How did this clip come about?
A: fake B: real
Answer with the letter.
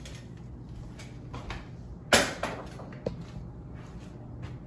B